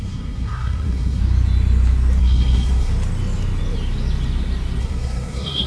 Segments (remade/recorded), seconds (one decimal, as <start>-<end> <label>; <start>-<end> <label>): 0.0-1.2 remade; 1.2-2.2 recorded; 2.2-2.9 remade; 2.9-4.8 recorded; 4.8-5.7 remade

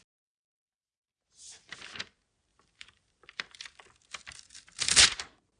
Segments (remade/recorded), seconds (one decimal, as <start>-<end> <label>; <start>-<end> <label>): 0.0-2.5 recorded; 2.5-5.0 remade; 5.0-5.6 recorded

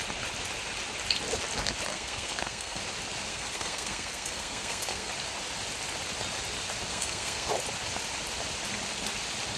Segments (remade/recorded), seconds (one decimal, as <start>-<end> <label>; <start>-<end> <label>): 0.0-1.9 recorded; 1.9-2.8 remade; 2.8-3.3 recorded; 3.3-5.1 remade; 5.1-6.9 recorded; 6.9-7.5 remade; 7.5-9.6 recorded

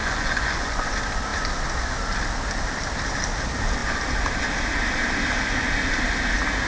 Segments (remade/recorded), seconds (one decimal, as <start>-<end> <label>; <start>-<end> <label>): 0.0-0.9 remade; 0.9-6.7 recorded

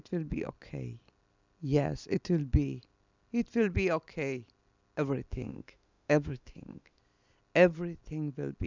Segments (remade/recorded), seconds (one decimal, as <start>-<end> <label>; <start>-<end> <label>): 0.0-5.3 recorded; 5.3-7.0 remade; 7.0-8.7 recorded

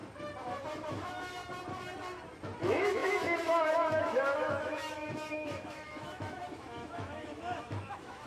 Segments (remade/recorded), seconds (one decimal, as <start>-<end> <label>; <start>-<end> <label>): 0.0-0.9 recorded; 0.9-1.4 remade; 1.4-2.6 recorded; 2.6-8.3 remade

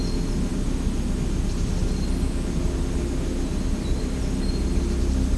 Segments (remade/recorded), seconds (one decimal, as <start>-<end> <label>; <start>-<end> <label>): 0.0-5.4 recorded

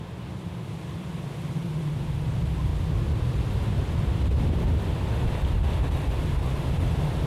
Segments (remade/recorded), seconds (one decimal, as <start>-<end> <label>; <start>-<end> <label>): 0.0-7.3 recorded